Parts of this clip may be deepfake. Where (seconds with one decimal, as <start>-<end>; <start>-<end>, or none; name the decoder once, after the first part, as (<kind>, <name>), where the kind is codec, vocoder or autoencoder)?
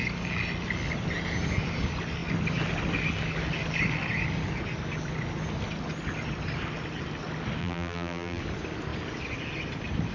7.6-8.4 (vocoder, BigVGAN v2)